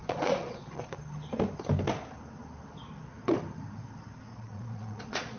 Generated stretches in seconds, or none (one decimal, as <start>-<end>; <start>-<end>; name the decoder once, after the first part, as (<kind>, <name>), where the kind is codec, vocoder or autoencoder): 0.0-1.0 (vocoder, Vocos); 4.3-5.4